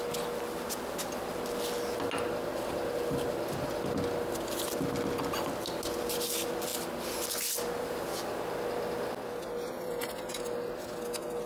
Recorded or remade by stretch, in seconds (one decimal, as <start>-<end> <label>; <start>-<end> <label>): 0.0-11.5 recorded